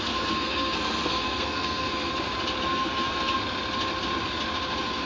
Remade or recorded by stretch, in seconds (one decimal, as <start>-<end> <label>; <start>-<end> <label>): 0.0-2.1 remade; 2.1-2.7 recorded; 2.7-3.4 remade; 3.4-5.1 recorded